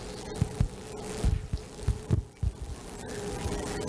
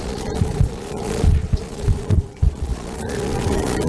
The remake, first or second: second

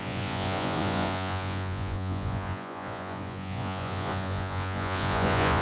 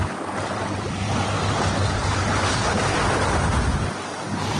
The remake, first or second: first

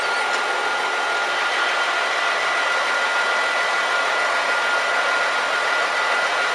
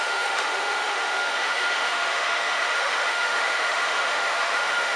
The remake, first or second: second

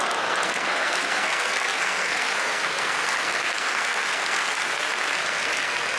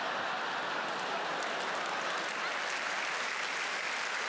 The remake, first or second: first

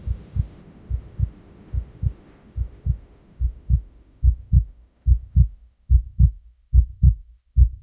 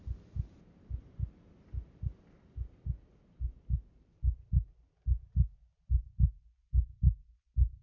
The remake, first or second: first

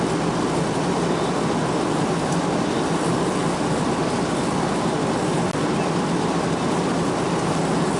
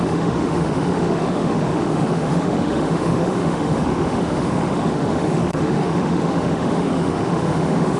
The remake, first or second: second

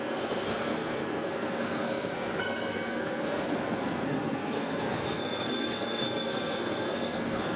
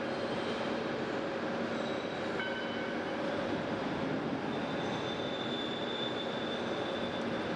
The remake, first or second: first